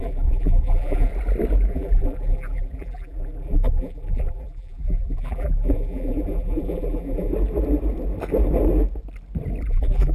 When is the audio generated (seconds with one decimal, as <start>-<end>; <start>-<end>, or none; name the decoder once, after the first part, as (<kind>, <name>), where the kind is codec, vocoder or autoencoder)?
0.0-1.1 (vocoder, BigVGAN v2); 1.7-7.3; 9.7-10.1